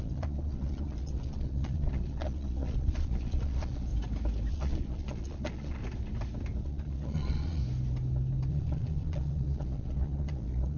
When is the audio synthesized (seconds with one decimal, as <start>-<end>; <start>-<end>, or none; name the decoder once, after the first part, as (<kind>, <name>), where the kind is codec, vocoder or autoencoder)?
0.0-3.9 (vocoder, Vocos); 4.5-5.8; 6.6-7.6; 8.5-10.8